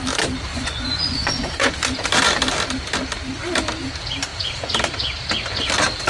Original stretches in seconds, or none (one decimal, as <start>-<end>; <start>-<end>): 0.0-0.5; 1.7-6.1